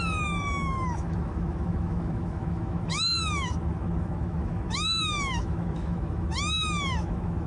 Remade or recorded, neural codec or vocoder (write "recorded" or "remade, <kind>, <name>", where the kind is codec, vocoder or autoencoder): remade, autoencoder, DAC-VAE